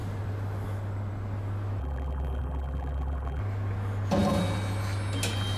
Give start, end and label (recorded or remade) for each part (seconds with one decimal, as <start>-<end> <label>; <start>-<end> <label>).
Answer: 0.0-1.8 recorded; 1.8-3.4 remade; 3.4-5.6 recorded